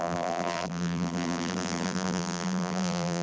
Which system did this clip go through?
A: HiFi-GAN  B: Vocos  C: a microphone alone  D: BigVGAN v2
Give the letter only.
D